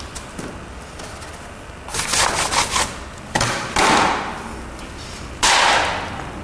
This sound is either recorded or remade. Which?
recorded